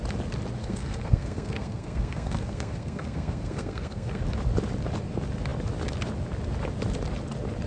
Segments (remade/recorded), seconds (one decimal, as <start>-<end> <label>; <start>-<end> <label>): 0.0-0.6 recorded; 0.6-4.2 remade; 4.2-7.7 recorded